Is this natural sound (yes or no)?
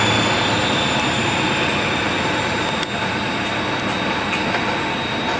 yes